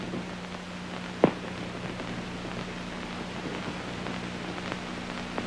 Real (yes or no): yes